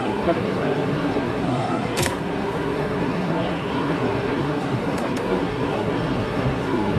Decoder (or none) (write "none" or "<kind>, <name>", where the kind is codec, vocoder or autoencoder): codec, SNAC